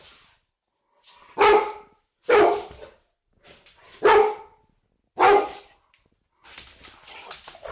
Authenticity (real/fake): real